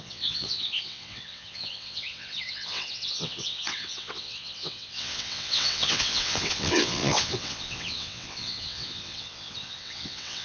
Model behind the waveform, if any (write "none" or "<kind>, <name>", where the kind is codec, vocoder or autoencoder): vocoder, WaveNeXt